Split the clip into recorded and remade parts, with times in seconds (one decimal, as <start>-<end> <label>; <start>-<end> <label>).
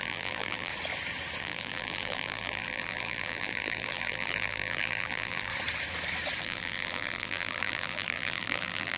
0.0-0.7 remade; 0.7-1.4 recorded; 1.4-5.5 remade; 5.5-6.4 recorded; 6.4-9.0 remade